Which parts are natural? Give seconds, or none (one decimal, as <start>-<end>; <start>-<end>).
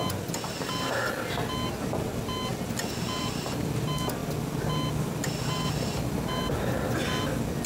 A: 0.0-7.7